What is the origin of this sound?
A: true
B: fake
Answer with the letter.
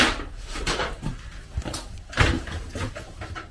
B